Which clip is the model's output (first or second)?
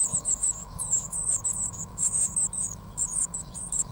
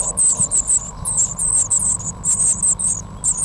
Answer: first